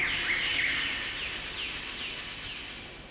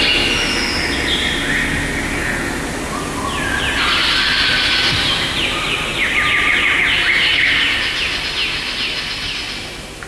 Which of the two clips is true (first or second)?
second